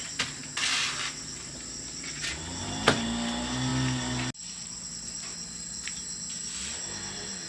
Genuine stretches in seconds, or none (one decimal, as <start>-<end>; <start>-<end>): 0.0-7.5